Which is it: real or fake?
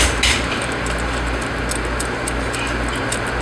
real